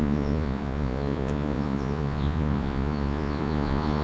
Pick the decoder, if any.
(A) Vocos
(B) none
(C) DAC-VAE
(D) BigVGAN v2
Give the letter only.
A